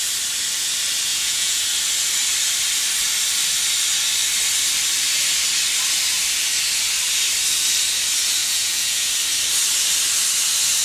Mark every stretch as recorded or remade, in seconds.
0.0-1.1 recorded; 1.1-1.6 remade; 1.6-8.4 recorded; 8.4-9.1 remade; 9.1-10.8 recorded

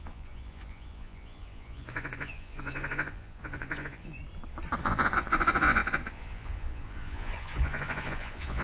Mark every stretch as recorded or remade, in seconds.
0.0-4.2 remade; 4.2-4.8 recorded; 4.8-8.6 remade

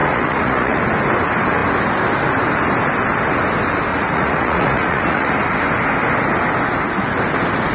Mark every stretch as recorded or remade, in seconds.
0.0-0.8 remade; 0.8-3.9 recorded; 3.9-5.3 remade; 5.3-7.7 recorded

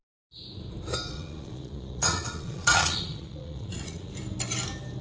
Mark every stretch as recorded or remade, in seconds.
0.0-1.1 recorded; 1.1-4.1 remade; 4.1-5.0 recorded

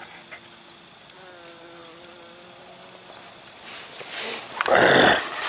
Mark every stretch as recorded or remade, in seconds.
0.0-5.5 recorded

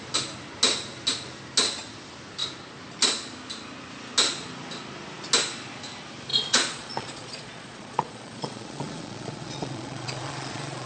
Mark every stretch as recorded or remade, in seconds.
0.0-6.3 recorded; 6.3-10.9 remade

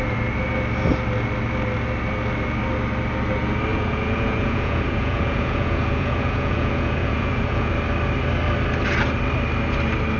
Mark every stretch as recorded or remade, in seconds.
0.0-3.7 recorded; 3.7-7.7 remade; 7.7-10.2 recorded

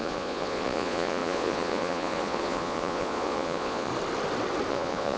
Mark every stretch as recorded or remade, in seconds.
0.0-3.9 remade; 3.9-4.7 recorded; 4.7-5.2 remade